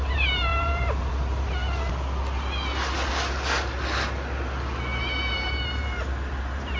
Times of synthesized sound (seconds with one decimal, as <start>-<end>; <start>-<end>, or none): 0.0-1.6; 5.3-6.8